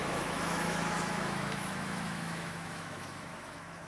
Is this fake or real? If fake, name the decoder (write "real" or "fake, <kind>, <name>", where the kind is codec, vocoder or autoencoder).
fake, autoencoder, DAC-VAE